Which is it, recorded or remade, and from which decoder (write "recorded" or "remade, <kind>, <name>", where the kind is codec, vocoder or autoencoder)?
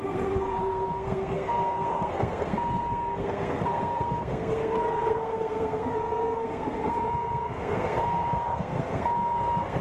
remade, codec, SNAC